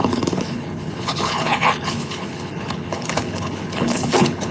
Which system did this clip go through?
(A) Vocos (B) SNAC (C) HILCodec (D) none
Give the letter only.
C